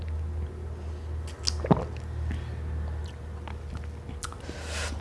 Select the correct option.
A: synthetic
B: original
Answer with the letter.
B